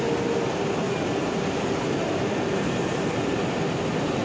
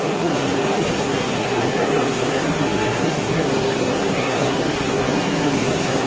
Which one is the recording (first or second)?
first